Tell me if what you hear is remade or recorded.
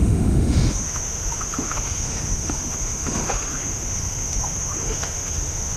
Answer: remade